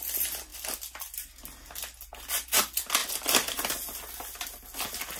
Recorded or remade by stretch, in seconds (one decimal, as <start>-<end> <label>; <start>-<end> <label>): 0.0-3.0 recorded; 3.0-3.7 remade; 3.7-5.2 recorded